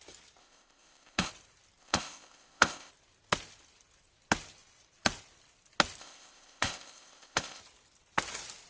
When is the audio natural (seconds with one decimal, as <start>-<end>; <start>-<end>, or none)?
0.0-0.4; 1.3-1.8; 2.9-6.0; 7.6-8.7